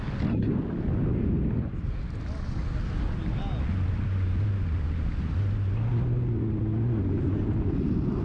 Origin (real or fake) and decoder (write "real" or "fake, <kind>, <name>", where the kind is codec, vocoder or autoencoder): real